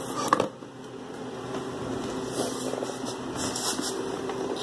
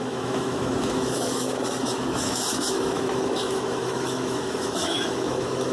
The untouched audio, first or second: first